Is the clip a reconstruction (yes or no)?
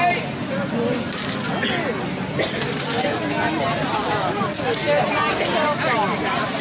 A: no